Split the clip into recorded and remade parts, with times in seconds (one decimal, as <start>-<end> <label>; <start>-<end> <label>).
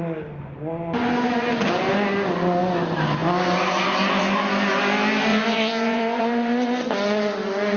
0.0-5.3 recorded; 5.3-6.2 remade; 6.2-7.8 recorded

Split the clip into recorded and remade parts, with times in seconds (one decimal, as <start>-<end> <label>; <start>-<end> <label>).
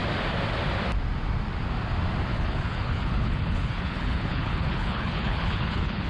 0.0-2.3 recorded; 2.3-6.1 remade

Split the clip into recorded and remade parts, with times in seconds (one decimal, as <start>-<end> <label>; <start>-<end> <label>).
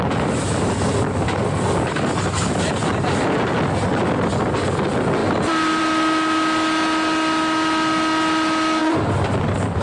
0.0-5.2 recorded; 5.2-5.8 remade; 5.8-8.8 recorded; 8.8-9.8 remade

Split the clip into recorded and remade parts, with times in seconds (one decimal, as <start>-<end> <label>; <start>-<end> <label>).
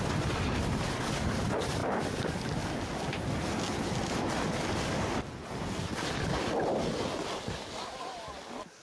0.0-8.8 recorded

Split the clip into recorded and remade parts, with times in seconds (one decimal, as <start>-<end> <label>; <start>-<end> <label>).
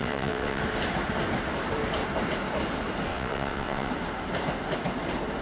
0.0-0.6 remade; 0.6-3.1 recorded; 3.1-3.9 remade; 3.9-5.4 recorded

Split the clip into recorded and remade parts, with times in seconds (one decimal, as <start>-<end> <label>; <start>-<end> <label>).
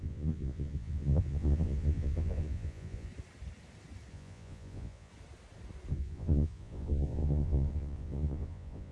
0.0-3.1 remade; 3.1-4.1 recorded; 4.1-5.1 remade; 5.1-5.9 recorded; 5.9-8.9 remade